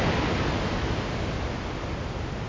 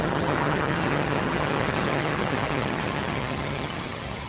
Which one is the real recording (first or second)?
first